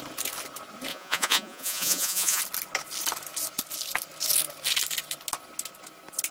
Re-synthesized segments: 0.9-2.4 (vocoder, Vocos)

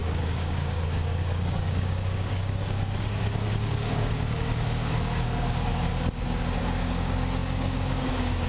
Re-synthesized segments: 0.0-5.9 (codec, DAC); 6.6-8.5